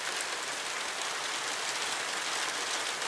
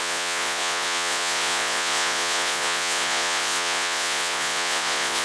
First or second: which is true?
first